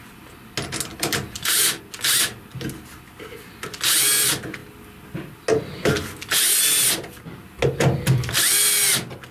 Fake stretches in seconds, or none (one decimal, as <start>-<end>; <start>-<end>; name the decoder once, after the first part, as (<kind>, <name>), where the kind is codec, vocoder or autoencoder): 0.9-1.8 (vocoder, BigVGAN v2)